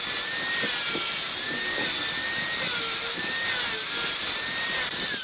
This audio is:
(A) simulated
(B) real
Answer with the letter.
B